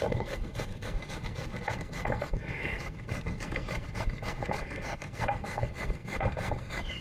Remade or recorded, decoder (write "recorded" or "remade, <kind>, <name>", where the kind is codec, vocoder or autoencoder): remade, codec, SNAC